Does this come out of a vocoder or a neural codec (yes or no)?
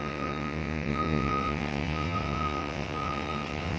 yes